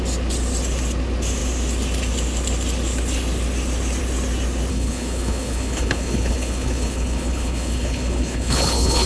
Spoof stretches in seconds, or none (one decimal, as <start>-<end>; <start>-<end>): 4.7-9.1